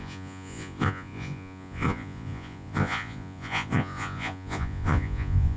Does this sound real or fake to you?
fake